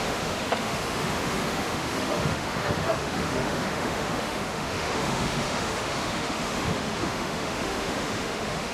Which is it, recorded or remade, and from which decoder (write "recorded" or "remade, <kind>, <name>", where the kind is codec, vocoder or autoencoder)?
remade, autoencoder, DAC-VAE